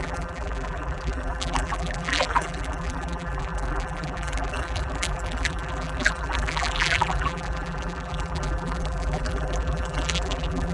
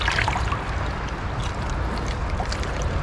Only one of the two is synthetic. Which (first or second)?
first